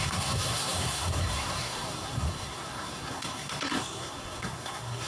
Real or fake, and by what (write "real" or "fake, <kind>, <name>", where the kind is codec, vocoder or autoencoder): fake, codec, SNAC